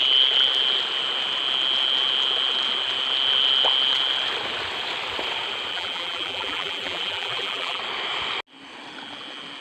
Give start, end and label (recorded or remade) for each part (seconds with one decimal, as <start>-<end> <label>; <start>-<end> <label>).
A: 0.0-5.7 recorded; 5.7-7.8 remade; 7.8-9.6 recorded